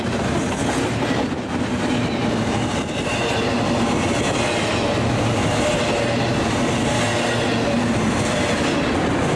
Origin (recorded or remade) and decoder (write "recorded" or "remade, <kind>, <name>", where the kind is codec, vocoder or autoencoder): recorded